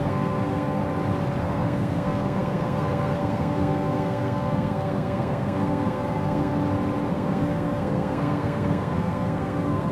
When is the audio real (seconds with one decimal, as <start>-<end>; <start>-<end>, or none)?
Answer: 0.8-1.4; 6.5-7.1